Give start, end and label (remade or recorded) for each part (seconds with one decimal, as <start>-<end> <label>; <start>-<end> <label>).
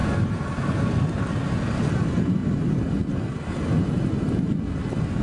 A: 0.0-5.2 recorded